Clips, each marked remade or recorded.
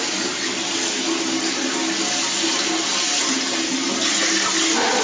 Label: recorded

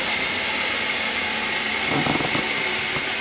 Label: recorded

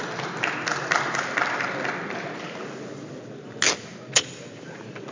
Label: recorded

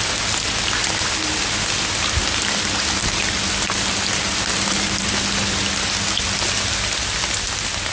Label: recorded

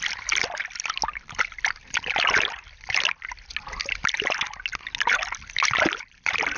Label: recorded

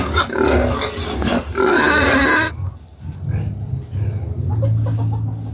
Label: recorded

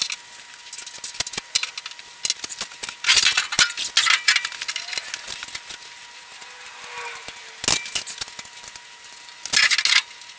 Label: recorded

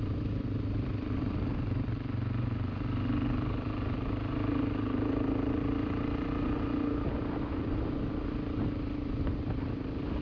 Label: recorded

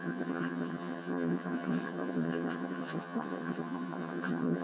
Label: remade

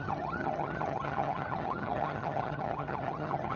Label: remade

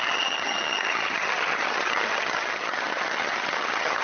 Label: remade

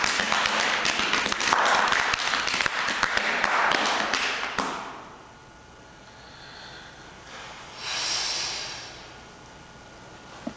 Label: recorded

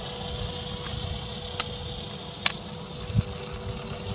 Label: recorded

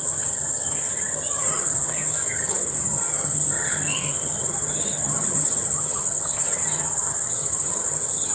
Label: remade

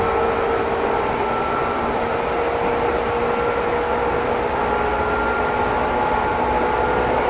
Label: recorded